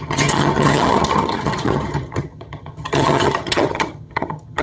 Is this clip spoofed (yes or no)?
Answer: yes